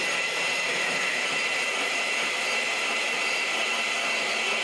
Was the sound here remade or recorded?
remade